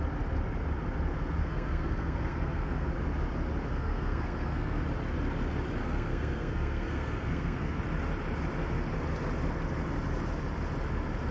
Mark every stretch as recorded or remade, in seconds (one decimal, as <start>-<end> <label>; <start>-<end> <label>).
0.0-1.4 recorded; 1.4-2.9 remade; 2.9-3.7 recorded; 3.7-4.8 remade; 4.8-5.8 recorded; 5.8-7.8 remade; 7.8-11.3 recorded